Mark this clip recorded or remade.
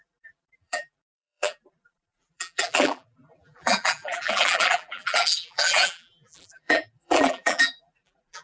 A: remade